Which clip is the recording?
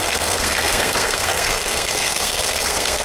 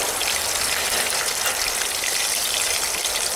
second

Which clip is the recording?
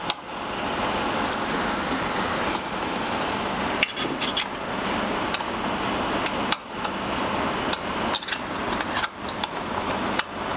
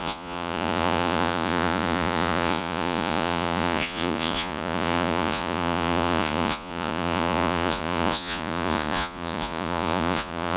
first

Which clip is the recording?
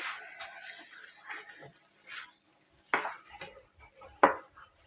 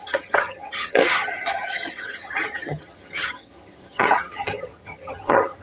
first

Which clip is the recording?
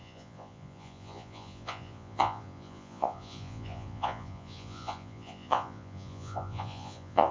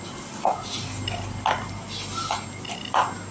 second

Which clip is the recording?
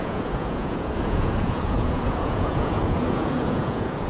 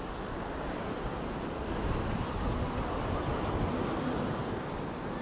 second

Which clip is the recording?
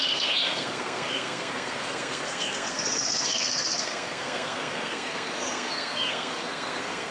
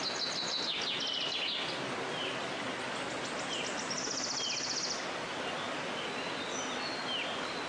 second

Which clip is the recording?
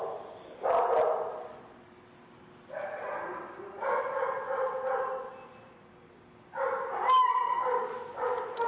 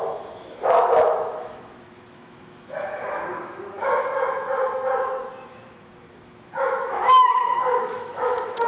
first